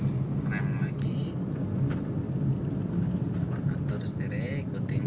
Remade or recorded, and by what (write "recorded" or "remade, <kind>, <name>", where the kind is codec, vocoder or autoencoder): recorded